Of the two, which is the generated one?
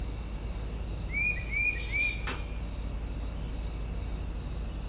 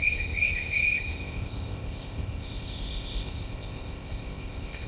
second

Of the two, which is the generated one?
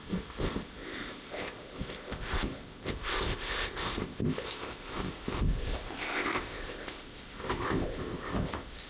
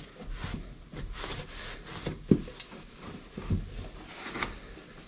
first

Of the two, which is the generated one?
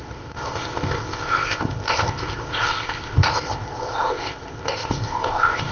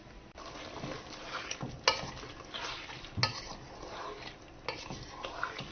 first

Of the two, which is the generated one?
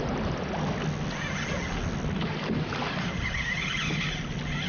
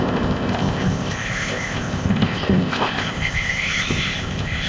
second